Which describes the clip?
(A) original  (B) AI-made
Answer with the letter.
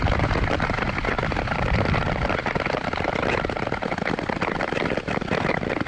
A